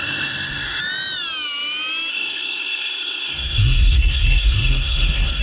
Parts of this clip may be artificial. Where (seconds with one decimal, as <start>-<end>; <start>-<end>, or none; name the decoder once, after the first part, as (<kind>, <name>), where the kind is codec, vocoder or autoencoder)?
0.0-0.8 (codec, SNAC); 2.1-5.4